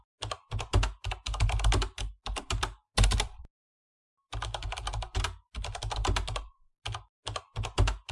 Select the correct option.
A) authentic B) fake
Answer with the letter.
A